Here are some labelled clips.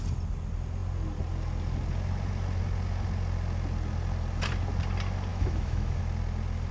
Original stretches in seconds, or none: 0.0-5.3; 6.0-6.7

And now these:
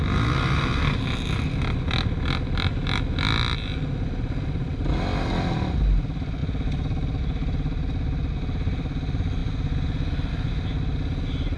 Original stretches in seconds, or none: 0.0-11.6

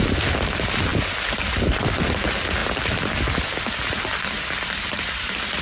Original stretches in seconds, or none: 0.0-5.6

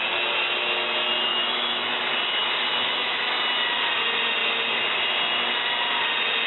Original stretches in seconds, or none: 0.0-1.3; 2.0-2.7; 3.2-6.5

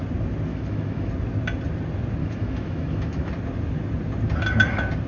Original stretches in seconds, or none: 0.0-0.5; 1.1-2.2; 3.3-5.1

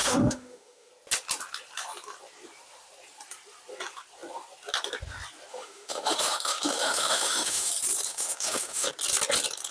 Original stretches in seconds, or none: 0.9-5.5; 7.7-8.1; 8.9-9.7

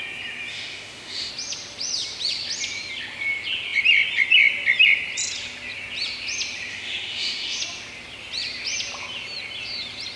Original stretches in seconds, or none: 0.0-0.5; 1.3-6.7; 7.6-10.2

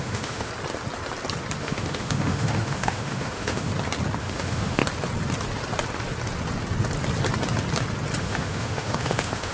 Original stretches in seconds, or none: 0.5-1.6; 3.7-4.2; 4.8-8.2